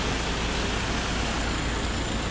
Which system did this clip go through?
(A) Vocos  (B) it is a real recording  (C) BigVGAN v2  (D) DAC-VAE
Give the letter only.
B